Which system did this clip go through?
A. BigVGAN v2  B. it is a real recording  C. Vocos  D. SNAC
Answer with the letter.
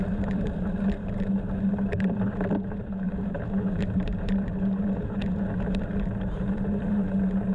A